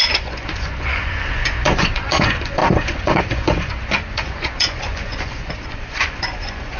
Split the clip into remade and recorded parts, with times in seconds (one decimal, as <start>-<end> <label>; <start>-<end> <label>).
0.0-6.8 remade